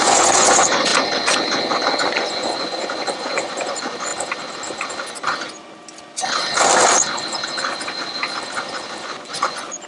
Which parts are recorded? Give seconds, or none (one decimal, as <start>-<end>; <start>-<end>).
0.9-2.0; 4.1-9.0